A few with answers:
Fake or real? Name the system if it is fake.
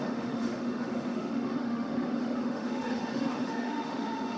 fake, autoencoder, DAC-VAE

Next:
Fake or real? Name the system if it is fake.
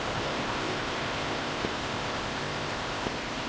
fake, codec, ZipCodec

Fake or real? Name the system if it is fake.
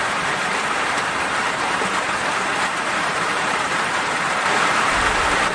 fake, vocoder, BigVGAN v2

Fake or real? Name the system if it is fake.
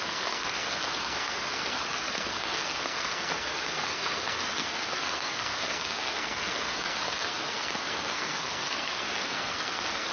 fake, codec, SNAC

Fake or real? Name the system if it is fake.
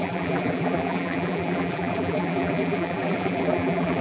fake, vocoder, BigVGAN v2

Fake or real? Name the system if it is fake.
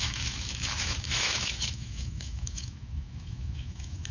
fake, autoencoder, DAC-VAE